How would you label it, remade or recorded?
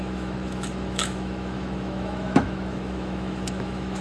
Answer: remade